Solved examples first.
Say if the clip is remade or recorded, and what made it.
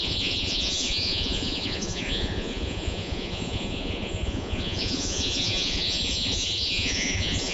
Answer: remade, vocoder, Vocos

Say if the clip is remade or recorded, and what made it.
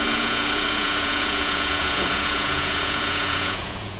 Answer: remade, vocoder, Vocos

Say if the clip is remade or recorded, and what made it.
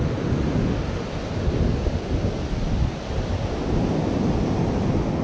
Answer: recorded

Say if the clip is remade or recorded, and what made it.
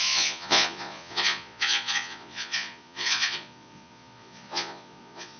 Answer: remade, vocoder, Vocos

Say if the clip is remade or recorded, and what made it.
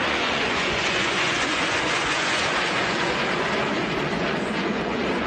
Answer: remade, vocoder, Vocos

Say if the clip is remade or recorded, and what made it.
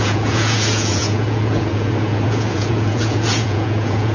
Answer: remade, vocoder, Vocos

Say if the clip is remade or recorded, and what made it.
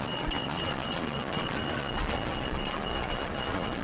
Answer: remade, vocoder, Vocos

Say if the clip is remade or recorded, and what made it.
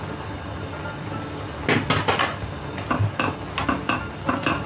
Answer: recorded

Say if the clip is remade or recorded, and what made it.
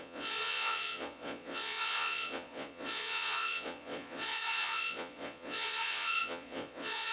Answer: remade, vocoder, Vocos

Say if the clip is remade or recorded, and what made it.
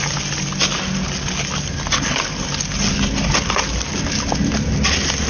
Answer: recorded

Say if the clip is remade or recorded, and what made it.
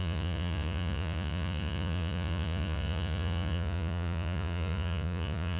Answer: remade, vocoder, Vocos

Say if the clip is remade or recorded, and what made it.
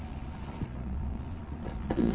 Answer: remade, vocoder, Vocos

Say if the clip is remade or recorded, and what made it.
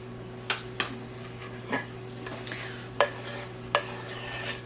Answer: recorded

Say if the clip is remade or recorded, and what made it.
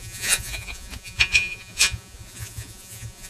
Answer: remade, vocoder, Vocos